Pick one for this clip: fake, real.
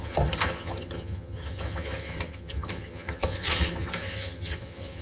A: fake